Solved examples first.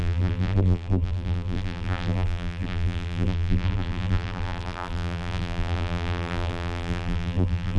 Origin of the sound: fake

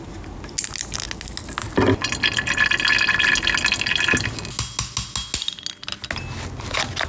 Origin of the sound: real